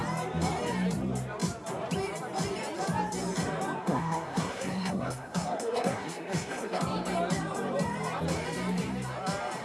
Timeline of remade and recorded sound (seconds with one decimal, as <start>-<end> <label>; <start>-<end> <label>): 0.0-3.8 recorded; 3.8-6.8 remade; 6.8-9.6 recorded